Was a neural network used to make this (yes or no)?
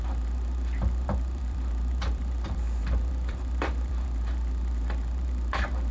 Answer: yes